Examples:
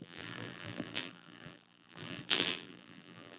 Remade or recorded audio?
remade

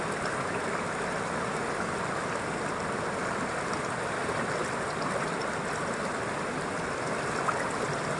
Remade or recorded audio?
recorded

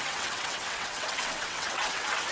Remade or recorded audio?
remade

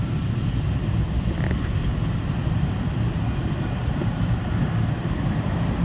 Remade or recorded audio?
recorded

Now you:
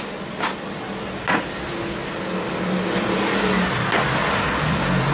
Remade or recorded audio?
recorded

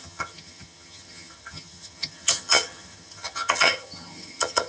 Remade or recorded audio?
remade